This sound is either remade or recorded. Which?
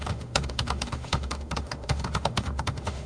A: remade